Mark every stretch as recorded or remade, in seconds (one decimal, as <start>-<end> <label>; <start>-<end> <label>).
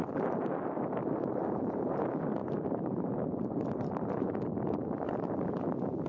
0.0-2.4 recorded; 2.4-4.1 remade; 4.1-6.1 recorded